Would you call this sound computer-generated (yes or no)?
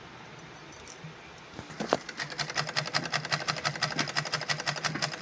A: no